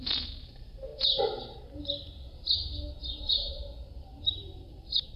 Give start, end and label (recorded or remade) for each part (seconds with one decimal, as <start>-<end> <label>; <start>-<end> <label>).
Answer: 0.0-5.2 remade